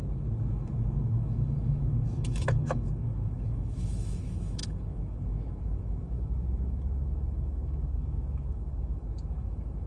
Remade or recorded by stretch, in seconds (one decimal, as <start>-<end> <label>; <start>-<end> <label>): 0.0-9.9 remade